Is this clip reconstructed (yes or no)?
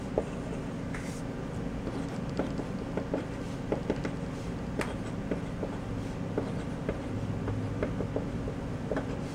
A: no